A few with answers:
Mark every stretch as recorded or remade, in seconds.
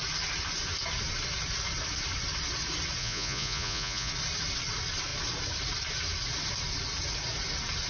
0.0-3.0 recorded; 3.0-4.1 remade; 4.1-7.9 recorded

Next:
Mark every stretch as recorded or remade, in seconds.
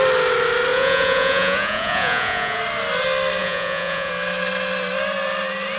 0.0-0.7 recorded; 0.7-2.6 remade; 2.6-3.4 recorded; 3.4-4.1 remade; 4.1-5.8 recorded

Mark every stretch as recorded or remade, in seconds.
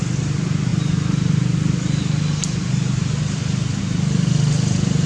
0.0-5.1 recorded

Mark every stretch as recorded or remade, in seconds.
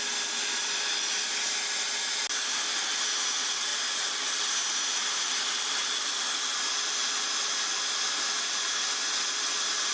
0.0-9.9 recorded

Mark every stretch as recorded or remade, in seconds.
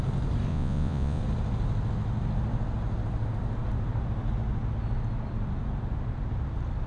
0.0-0.5 recorded; 0.5-1.2 remade; 1.2-6.9 recorded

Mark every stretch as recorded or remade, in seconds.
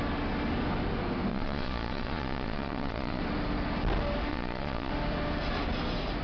0.0-1.3 recorded; 1.3-3.2 remade; 3.2-4.3 recorded; 4.3-4.9 remade; 4.9-6.2 recorded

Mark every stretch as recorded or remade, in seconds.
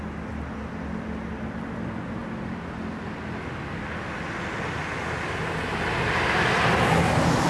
0.0-7.5 recorded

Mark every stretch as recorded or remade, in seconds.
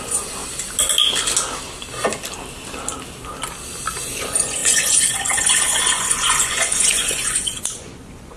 0.0-0.4 remade; 0.4-4.0 recorded; 4.0-8.4 remade